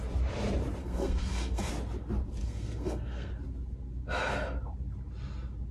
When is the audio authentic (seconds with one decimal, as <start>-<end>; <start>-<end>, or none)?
0.0-0.8; 1.7-2.4; 3.3-5.7